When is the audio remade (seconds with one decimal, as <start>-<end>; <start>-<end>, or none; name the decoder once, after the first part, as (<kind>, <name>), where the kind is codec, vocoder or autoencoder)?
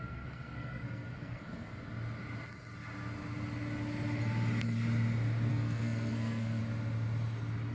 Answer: 0.0-1.7 (codec, SNAC); 5.5-6.6